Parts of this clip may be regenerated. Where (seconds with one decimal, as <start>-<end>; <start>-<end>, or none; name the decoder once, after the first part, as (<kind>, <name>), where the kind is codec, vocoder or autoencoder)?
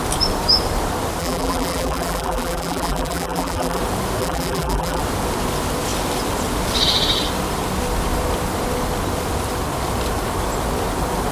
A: 1.2-3.8 (vocoder, BigVGAN v2); 4.2-5.0